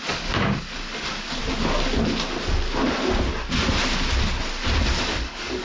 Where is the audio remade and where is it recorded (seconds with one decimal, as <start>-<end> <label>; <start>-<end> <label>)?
0.0-1.4 remade; 1.4-4.8 recorded; 4.8-5.6 remade